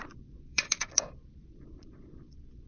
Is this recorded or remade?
remade